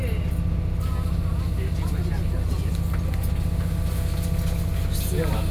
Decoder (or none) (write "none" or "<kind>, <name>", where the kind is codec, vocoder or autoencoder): none